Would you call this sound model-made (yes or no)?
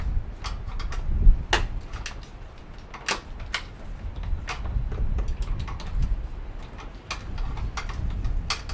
no